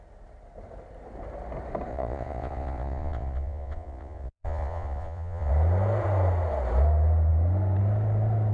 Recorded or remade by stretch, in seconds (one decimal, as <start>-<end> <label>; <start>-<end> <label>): 0.0-1.9 recorded; 1.9-5.5 remade; 5.5-8.5 recorded